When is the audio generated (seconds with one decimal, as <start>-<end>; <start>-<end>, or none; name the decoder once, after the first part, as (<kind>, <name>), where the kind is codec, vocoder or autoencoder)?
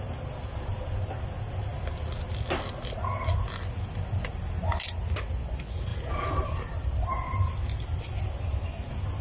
none